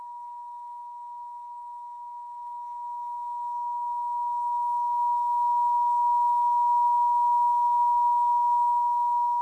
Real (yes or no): no